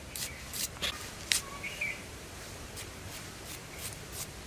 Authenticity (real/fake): fake